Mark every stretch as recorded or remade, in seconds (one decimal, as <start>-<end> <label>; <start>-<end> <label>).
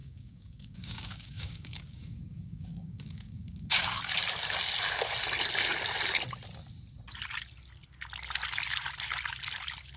0.0-4.0 remade; 4.0-10.0 recorded